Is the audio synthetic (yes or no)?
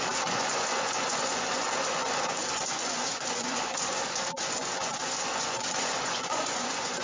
yes